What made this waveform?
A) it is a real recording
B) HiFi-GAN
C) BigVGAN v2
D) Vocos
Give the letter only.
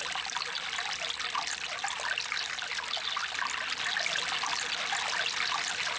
A